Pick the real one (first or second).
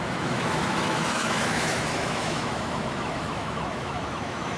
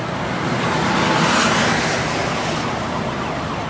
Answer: second